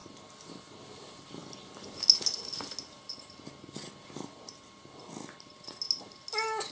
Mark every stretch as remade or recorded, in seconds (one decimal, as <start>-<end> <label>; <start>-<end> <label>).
0.0-6.7 recorded